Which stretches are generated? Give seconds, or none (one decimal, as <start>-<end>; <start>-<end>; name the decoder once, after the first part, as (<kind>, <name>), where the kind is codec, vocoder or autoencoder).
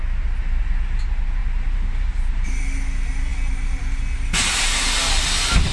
1.4-2.5 (vocoder, BigVGAN v2)